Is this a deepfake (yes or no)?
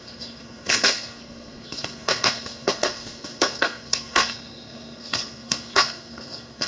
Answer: yes